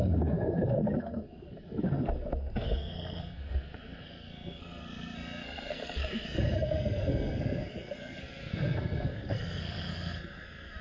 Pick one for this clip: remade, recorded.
remade